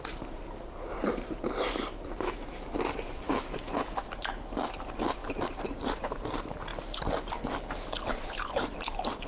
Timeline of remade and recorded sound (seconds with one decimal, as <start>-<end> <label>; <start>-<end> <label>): 0.0-4.3 remade; 4.3-4.8 recorded; 4.8-6.7 remade; 6.7-8.1 recorded; 8.1-9.3 remade